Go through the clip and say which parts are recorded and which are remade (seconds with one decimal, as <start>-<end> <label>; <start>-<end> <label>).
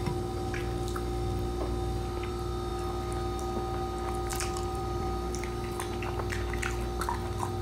0.0-4.3 recorded; 4.3-5.3 remade; 5.3-7.6 recorded